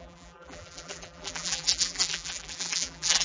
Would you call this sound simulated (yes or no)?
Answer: yes